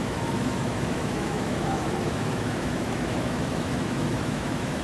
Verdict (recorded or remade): remade